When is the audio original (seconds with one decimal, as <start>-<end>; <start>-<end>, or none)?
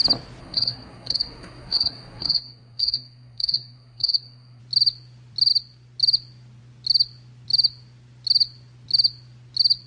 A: 0.0-0.4; 4.6-9.9